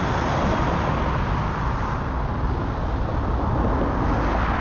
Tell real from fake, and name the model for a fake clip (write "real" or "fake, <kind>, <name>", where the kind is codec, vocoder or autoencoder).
real